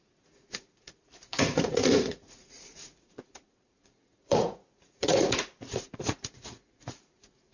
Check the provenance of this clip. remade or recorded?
remade